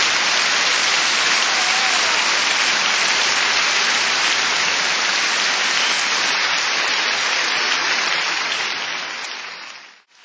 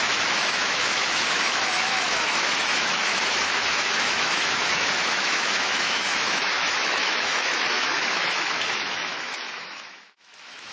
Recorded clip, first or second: first